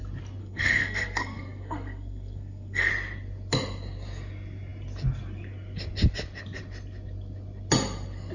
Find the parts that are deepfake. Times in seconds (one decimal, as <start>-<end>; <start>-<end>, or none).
0.4-2.9